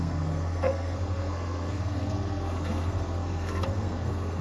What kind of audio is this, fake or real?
fake